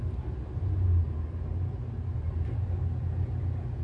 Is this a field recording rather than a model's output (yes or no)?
yes